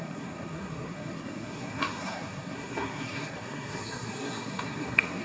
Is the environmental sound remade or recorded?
remade